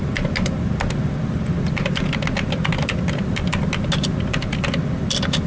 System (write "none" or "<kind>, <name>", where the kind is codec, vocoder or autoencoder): none